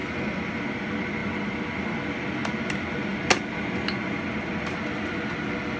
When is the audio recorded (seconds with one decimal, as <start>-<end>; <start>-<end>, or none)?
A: 0.6-5.8